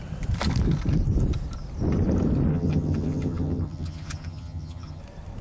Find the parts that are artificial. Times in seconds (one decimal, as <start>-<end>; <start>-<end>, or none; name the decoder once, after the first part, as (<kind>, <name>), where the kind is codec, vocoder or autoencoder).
2.5-5.0 (vocoder, HiFi-GAN)